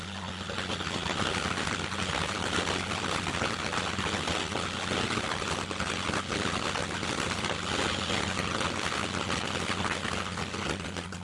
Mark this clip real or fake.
real